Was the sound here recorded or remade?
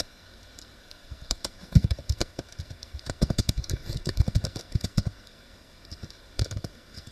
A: remade